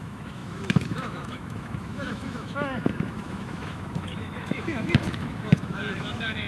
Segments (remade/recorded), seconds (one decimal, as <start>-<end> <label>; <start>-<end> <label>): 0.0-6.5 remade